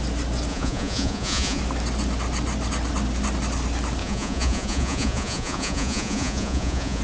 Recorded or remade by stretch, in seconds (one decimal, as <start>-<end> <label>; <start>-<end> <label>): 0.0-0.5 recorded; 0.5-1.6 remade; 1.6-4.0 recorded; 4.0-7.0 remade